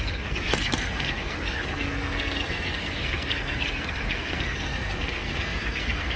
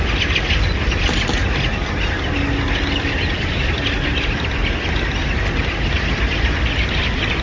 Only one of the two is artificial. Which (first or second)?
first